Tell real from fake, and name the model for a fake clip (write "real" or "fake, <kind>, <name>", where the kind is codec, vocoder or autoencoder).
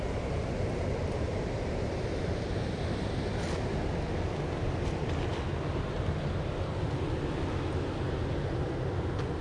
real